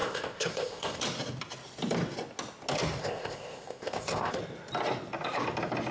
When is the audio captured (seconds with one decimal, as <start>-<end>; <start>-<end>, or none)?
1.0-3.0; 4.4-5.9